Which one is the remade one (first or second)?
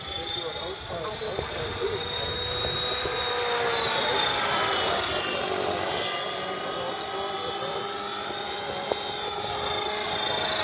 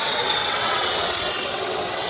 second